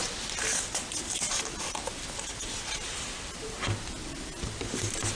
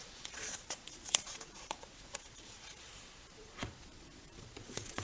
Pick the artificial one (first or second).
second